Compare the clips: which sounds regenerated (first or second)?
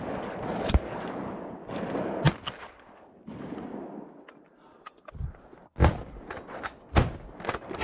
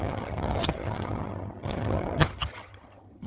second